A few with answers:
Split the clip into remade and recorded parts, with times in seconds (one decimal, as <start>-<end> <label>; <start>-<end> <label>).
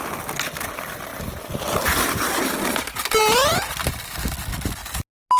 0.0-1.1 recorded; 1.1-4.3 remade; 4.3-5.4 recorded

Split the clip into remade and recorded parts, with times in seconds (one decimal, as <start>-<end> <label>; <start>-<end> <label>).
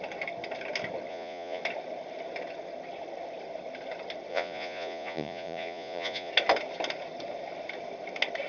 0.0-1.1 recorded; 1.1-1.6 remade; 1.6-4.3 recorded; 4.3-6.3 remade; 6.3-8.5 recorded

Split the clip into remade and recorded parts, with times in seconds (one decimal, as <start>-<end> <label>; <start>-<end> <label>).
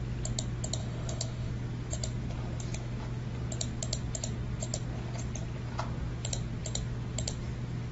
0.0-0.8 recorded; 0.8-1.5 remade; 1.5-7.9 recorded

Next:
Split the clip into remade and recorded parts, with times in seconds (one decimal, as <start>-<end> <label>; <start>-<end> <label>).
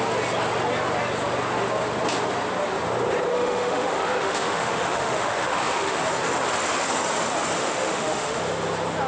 0.0-3.3 recorded; 3.3-6.0 remade; 6.0-7.6 recorded; 7.6-8.4 remade; 8.4-9.1 recorded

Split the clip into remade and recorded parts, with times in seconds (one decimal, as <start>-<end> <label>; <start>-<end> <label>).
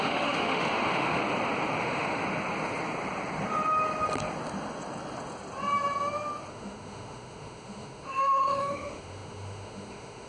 0.0-1.2 remade; 1.2-1.8 recorded; 1.8-2.2 remade; 2.2-6.5 recorded; 6.5-10.3 remade